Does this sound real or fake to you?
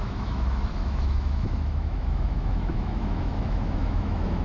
fake